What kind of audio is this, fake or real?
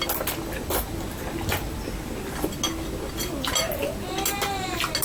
real